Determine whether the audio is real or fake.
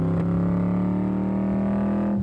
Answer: real